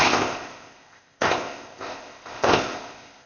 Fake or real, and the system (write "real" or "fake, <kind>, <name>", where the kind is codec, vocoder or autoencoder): fake, codec, ZipCodec